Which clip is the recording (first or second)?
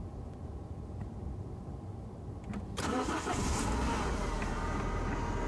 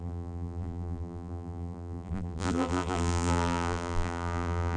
first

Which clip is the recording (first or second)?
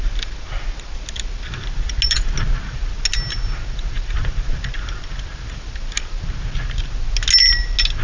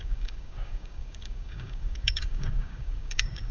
first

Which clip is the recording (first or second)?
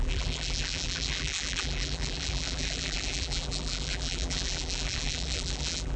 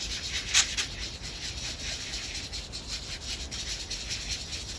second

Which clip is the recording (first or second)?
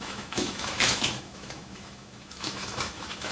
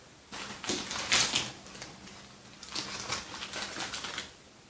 second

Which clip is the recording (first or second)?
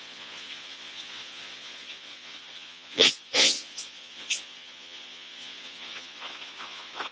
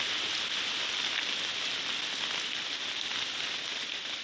second